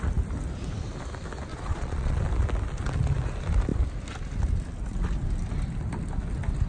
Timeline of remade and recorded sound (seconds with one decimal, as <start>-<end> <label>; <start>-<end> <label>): 0.0-1.5 recorded; 1.5-2.2 remade; 2.2-6.7 recorded